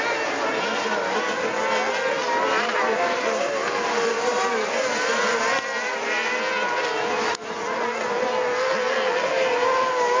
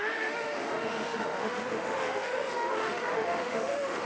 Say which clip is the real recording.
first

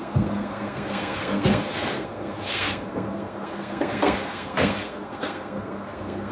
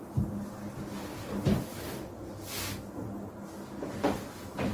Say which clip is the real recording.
second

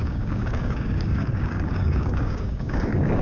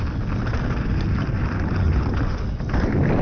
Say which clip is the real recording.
second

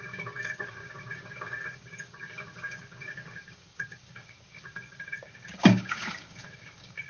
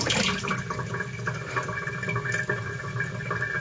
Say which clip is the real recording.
second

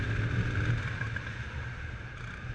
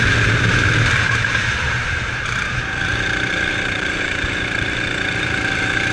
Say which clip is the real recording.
first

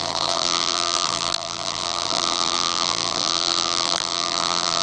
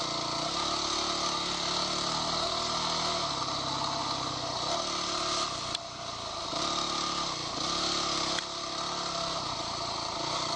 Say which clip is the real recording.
second